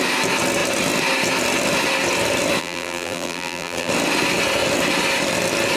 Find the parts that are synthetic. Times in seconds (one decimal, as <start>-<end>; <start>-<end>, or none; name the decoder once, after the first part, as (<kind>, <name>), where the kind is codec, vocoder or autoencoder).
2.6-3.9 (vocoder, BigVGAN v2)